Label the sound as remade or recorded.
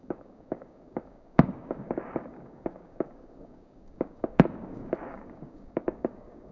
remade